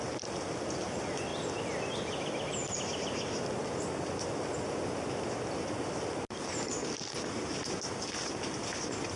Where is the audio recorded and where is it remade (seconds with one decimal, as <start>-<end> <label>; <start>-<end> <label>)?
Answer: 0.0-9.2 recorded